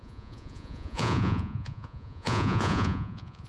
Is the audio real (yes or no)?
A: no